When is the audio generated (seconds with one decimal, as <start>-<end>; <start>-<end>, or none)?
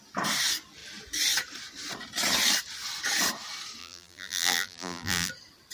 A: 3.8-5.3